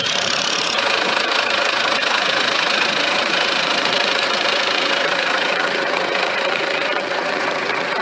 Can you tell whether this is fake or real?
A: fake